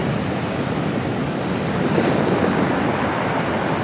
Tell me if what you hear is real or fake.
real